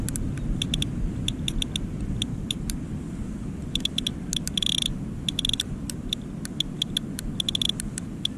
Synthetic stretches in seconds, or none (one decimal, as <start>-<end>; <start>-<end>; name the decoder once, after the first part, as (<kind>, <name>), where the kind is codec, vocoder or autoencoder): 2.3-2.8 (vocoder, BigVGAN v2)